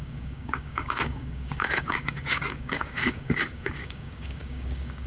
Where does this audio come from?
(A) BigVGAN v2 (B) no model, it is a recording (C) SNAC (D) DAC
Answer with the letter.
D